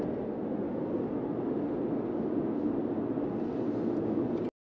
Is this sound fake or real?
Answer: real